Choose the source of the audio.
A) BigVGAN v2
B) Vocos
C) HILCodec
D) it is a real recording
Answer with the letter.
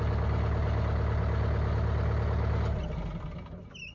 D